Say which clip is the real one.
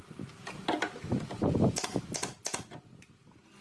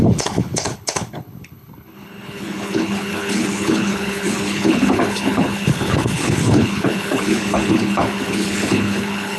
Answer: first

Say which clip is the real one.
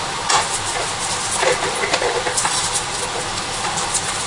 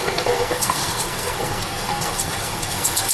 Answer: first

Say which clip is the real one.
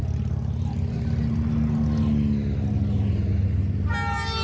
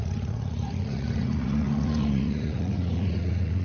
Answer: first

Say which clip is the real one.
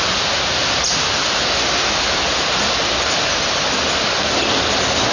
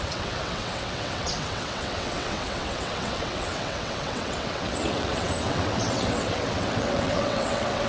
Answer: first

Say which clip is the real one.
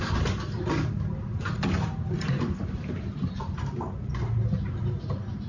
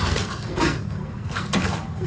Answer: first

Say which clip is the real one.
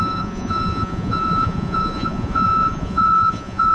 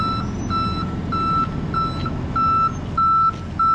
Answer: second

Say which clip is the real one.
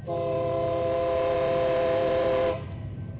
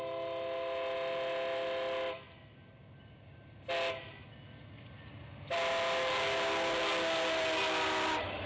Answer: second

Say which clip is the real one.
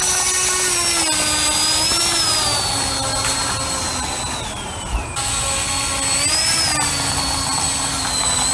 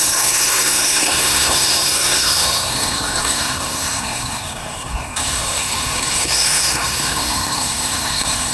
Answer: first